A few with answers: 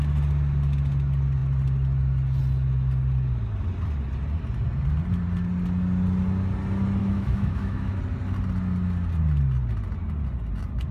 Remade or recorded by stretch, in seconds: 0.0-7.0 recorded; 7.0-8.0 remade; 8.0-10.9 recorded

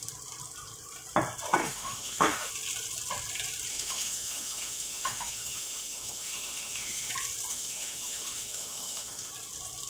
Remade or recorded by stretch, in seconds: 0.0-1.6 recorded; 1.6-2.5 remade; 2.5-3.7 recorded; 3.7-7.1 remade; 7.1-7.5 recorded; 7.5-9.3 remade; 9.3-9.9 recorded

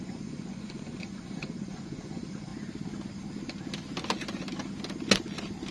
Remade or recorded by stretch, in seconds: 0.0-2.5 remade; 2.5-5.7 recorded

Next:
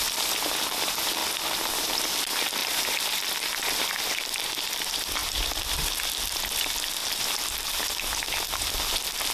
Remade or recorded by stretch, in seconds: 0.0-1.2 remade; 1.2-1.7 recorded; 1.7-7.0 remade; 7.0-7.6 recorded; 7.6-9.3 remade

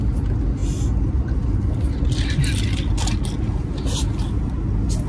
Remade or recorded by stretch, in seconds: 0.0-5.1 recorded

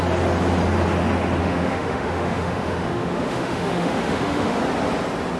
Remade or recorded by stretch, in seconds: 0.0-1.4 recorded; 1.4-4.6 remade; 4.6-5.4 recorded

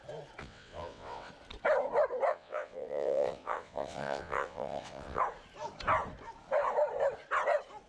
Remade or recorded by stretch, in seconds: 0.0-0.4 recorded; 0.4-1.3 remade; 1.3-2.3 recorded; 2.3-5.2 remade; 5.2-7.9 recorded

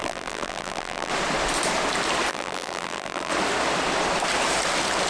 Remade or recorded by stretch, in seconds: 0.0-1.1 remade; 1.1-2.3 recorded; 2.3-3.3 remade; 3.3-5.1 recorded